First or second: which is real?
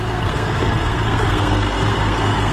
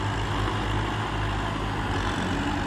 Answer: second